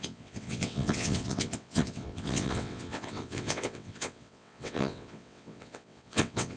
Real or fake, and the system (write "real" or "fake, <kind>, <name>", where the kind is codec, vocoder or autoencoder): fake, vocoder, WaveNeXt